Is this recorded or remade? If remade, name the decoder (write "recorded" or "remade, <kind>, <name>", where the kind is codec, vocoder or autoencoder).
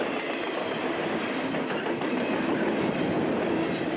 recorded